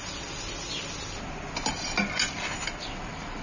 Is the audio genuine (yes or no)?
yes